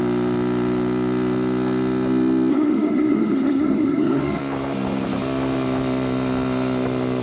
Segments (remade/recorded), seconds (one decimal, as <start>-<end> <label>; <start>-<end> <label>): 0.0-2.5 recorded; 2.5-4.4 remade; 4.4-7.2 recorded